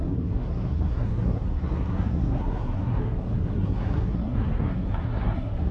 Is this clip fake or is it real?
fake